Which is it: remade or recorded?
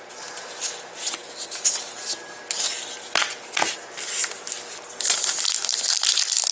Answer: recorded